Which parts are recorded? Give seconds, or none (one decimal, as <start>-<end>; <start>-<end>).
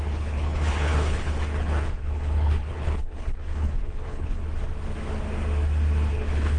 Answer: 4.4-6.1